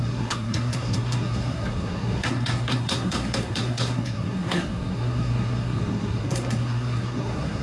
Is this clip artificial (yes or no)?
yes